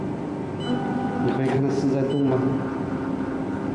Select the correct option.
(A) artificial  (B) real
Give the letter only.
B